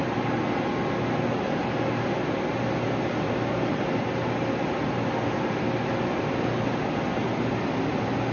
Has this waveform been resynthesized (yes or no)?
no